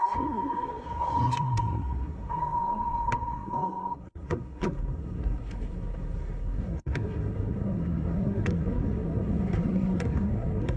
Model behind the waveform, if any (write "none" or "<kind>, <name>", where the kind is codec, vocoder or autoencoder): codec, SNAC